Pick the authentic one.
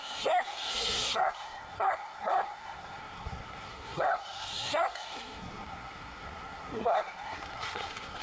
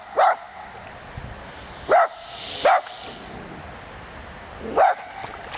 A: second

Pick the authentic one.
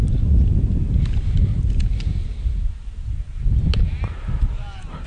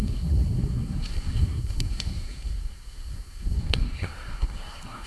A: first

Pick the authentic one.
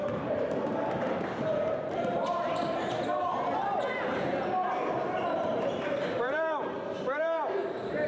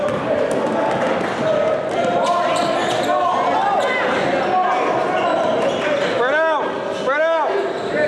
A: second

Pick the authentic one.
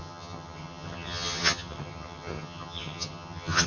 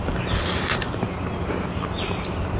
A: second